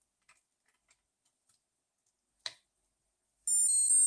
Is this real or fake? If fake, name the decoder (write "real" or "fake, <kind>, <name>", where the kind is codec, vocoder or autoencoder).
real